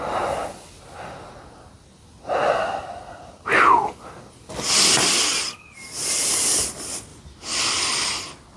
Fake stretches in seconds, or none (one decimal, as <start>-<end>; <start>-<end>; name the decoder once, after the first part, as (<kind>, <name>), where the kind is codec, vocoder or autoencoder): none